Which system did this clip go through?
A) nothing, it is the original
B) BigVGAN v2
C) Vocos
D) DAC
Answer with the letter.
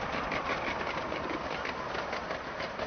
A